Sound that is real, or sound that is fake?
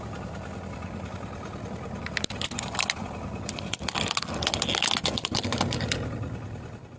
real